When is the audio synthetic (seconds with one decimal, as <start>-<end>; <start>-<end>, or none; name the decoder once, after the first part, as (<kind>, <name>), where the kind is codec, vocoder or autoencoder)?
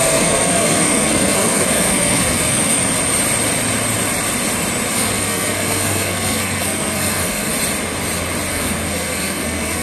0.0-2.8 (codec, SNAC); 4.9-7.5; 8.5-9.8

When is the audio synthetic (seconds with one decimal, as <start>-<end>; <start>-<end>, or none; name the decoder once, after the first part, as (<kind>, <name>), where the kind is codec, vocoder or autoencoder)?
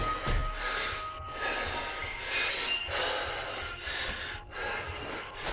none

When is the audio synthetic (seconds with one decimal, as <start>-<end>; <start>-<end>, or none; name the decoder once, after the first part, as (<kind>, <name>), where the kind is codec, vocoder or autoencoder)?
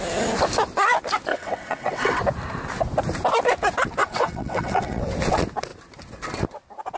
1.3-2.2 (vocoder, WaveNeXt); 4.0-5.0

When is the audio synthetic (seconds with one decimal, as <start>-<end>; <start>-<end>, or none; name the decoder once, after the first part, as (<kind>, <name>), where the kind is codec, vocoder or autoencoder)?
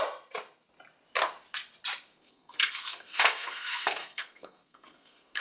2.1-5.4 (codec, SNAC)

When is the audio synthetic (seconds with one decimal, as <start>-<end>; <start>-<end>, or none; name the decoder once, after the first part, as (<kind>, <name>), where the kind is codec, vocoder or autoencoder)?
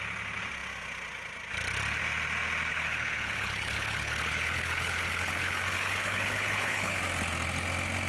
2.7-7.0 (codec, HILCodec)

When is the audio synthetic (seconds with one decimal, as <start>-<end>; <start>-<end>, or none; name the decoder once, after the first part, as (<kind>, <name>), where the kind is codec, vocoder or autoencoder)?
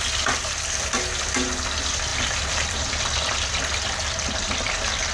2.1-3.0 (vocoder, BigVGAN v2)